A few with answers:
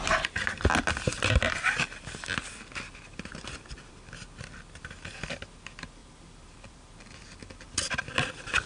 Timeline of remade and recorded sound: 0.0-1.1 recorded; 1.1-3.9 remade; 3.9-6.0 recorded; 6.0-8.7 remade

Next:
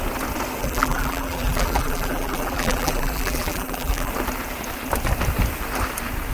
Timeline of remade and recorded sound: 0.0-0.6 recorded; 0.6-4.1 remade; 4.1-6.3 recorded

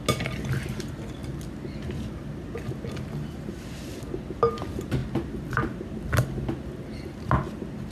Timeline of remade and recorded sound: 0.0-7.9 recorded

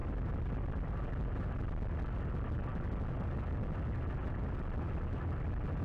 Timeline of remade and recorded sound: 0.0-5.8 recorded

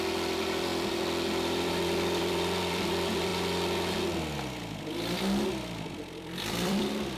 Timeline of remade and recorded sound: 0.0-3.3 remade; 3.3-6.0 recorded; 6.0-7.2 remade

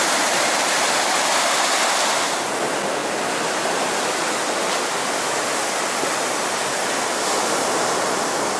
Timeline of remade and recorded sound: 0.0-0.7 remade; 0.7-8.6 recorded

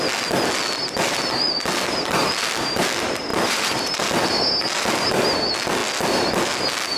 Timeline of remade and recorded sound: 0.0-3.3 recorded; 3.3-4.0 remade; 4.0-7.0 recorded

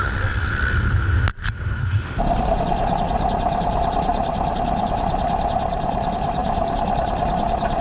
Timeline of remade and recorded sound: 0.0-6.4 recorded; 6.4-6.9 remade; 6.9-7.8 recorded